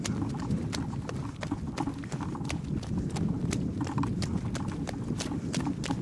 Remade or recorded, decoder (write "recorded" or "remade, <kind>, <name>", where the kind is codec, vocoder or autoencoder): recorded